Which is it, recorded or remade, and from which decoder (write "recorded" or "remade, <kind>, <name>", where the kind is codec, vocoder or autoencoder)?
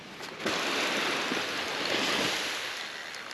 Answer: recorded